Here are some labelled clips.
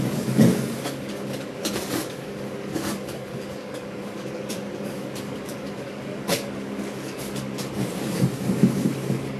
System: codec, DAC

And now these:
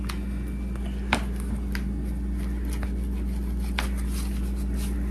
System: none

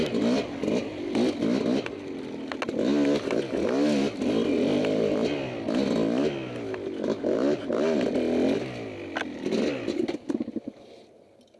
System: none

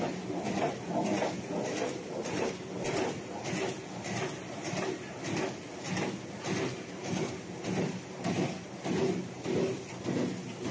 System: none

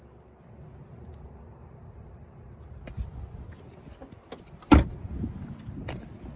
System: none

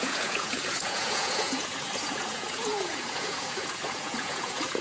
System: vocoder, Vocos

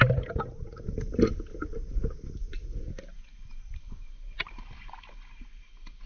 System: none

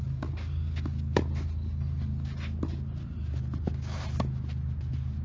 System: none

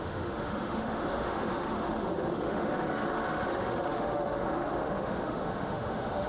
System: autoencoder, DAC-VAE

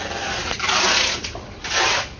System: none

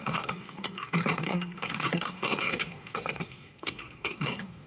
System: codec, SNAC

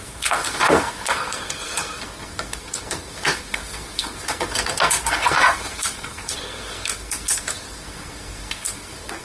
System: codec, SNAC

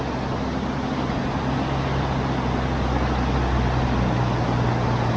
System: none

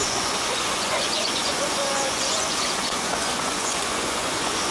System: vocoder, Vocos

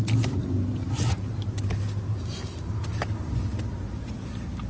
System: none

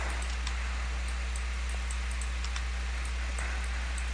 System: none